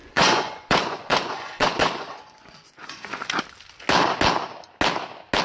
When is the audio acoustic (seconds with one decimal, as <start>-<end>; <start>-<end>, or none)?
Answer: 3.2-5.4